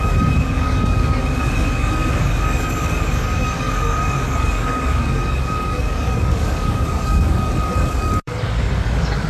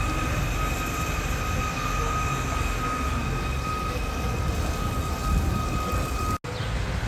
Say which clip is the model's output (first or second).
first